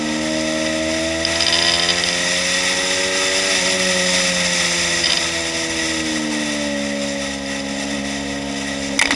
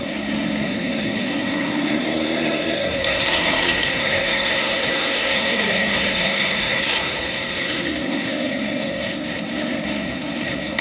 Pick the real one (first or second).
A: first